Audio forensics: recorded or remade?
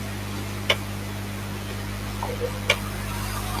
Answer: recorded